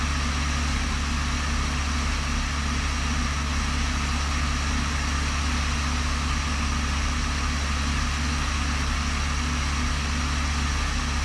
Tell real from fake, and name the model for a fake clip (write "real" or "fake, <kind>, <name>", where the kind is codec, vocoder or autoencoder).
real